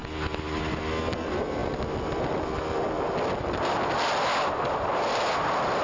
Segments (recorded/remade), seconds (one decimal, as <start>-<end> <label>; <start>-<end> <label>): 0.0-5.8 recorded